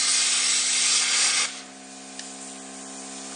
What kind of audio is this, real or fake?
real